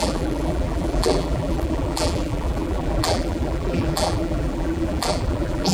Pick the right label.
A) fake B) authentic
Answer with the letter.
A